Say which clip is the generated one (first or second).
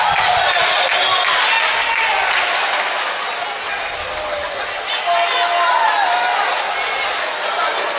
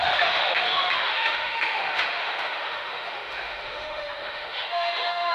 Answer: second